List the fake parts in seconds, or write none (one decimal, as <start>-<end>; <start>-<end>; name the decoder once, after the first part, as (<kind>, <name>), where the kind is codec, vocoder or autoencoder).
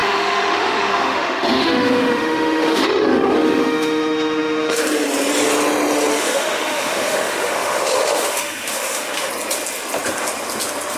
0.0-4.8 (autoencoder, DAC-VAE); 6.1-9.3